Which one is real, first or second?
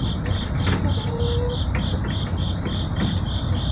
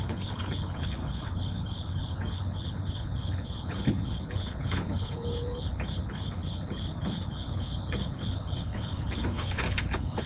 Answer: first